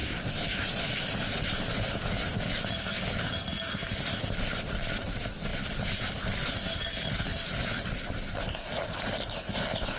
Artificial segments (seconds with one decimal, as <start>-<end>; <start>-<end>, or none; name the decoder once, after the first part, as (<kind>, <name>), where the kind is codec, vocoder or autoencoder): 7.3-8.1 (vocoder, BigVGAN v2)